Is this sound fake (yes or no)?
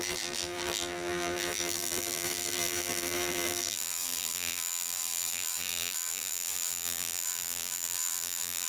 yes